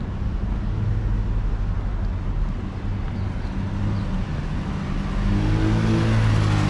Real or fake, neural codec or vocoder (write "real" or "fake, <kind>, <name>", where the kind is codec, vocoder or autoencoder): real